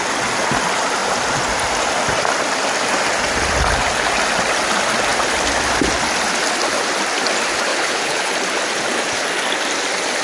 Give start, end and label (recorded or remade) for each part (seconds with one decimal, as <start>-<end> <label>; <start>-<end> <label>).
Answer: 0.0-7.7 recorded; 7.7-8.3 remade; 8.3-10.2 recorded